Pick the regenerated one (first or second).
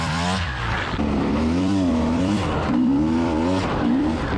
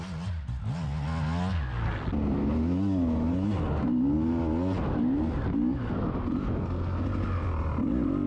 first